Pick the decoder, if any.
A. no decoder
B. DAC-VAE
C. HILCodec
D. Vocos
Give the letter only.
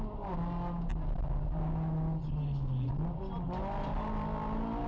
A